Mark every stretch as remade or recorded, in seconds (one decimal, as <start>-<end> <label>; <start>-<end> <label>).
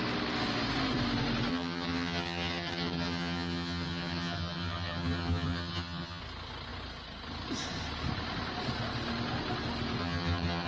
0.0-1.5 recorded; 1.5-6.2 remade; 6.2-10.0 recorded; 10.0-10.7 remade